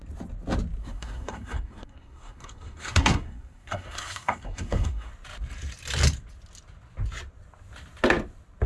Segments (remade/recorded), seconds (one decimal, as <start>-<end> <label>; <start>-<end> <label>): 0.0-0.8 recorded; 0.8-5.1 remade; 5.1-8.7 recorded